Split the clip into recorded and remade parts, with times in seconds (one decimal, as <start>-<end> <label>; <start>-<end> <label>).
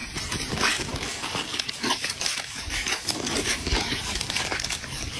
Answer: 0.0-0.5 recorded; 0.5-5.2 remade